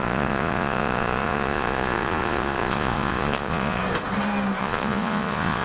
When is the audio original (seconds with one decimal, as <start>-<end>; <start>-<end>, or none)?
3.8-4.6